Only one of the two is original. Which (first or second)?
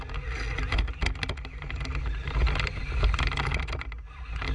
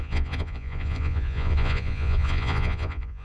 first